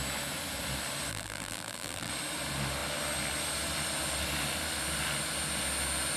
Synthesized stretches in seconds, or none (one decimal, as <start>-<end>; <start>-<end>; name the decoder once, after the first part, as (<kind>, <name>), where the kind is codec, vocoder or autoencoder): 1.1-2.1 (vocoder, BigVGAN v2)